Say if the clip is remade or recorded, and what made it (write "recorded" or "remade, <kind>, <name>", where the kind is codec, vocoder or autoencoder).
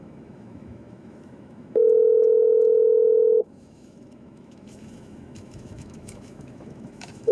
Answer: remade, autoencoder, DAC-VAE